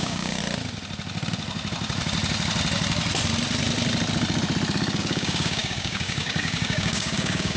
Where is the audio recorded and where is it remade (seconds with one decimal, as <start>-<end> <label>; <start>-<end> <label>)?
0.0-0.4 remade; 0.4-5.0 recorded; 5.0-7.6 remade

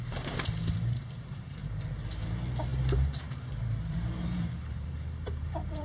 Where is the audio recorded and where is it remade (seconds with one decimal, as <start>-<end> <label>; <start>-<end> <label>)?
0.0-0.6 recorded; 0.6-5.8 remade

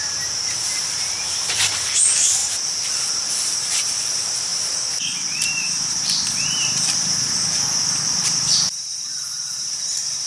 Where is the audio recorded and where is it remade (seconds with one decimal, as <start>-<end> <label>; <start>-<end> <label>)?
0.0-10.3 remade

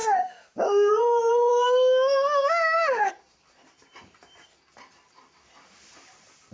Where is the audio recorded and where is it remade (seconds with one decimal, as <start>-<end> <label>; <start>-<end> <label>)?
0.0-0.9 remade; 0.9-1.5 recorded; 1.5-3.1 remade; 3.1-6.5 recorded

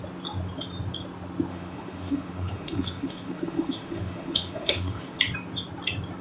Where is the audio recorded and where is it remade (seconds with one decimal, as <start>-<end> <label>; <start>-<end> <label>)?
0.0-1.5 recorded; 1.5-5.2 remade; 5.2-6.2 recorded

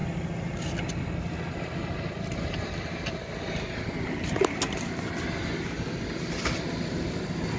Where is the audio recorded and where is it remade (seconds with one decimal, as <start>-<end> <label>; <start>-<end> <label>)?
0.0-7.6 recorded

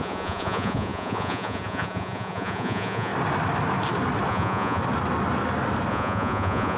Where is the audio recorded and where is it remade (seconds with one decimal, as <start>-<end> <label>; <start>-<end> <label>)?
0.0-3.1 remade; 3.1-4.3 recorded; 4.3-4.8 remade; 4.8-5.9 recorded; 5.9-6.8 remade